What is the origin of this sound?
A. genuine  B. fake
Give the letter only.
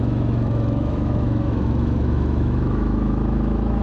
B